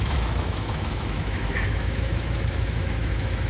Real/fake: fake